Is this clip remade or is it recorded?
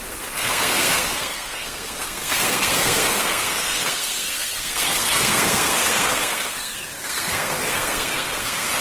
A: remade